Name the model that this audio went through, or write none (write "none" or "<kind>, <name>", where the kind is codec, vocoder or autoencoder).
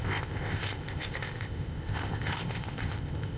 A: codec, ZipCodec